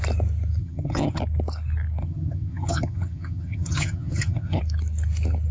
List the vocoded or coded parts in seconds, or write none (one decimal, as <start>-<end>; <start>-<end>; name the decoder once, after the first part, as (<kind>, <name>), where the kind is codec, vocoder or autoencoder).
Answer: 0.6-1.2 (vocoder, HiFi-GAN); 2.0-4.6

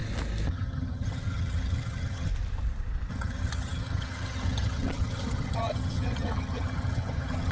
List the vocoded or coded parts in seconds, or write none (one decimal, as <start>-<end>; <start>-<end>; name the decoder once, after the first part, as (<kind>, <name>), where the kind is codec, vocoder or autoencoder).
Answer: 0.5-2.3 (vocoder, HiFi-GAN); 3.1-7.5

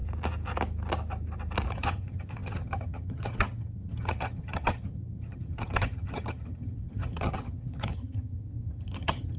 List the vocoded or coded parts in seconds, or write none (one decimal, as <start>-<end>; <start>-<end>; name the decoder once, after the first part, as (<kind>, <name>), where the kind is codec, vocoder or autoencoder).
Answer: 1.7-9.4 (vocoder, HiFi-GAN)

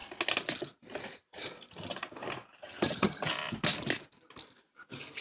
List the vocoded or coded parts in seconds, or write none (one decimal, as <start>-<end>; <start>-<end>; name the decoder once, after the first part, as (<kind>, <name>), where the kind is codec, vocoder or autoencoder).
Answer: 2.6-3.3 (vocoder, HiFi-GAN)

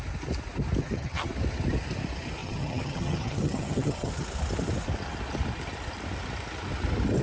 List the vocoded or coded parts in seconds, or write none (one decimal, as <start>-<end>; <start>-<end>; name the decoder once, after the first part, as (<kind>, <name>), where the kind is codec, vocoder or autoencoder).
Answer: 0.8-1.3 (vocoder, HiFi-GAN); 2.4-4.1

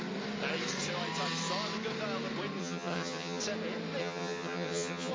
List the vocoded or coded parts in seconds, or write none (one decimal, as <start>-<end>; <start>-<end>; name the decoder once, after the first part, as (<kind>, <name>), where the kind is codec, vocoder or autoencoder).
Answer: 2.6-3.4 (vocoder, HiFi-GAN); 4.0-5.1

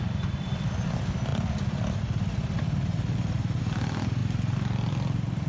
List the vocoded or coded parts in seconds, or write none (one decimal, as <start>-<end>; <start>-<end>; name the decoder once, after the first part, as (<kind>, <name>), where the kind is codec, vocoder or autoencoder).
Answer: none